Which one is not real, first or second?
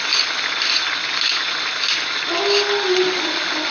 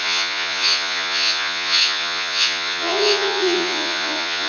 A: second